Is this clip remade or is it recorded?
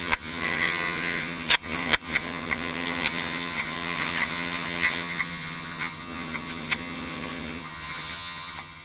remade